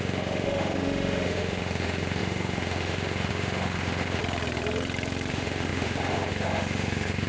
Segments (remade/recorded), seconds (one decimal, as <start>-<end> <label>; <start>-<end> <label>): 0.0-4.2 remade; 4.2-5.3 recorded; 5.3-7.3 remade